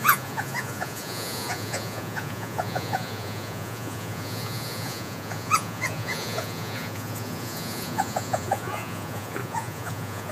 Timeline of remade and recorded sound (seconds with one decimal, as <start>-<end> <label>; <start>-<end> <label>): 0.0-10.3 remade